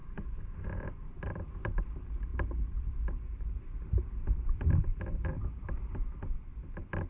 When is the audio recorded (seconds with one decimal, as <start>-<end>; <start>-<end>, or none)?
1.8-7.1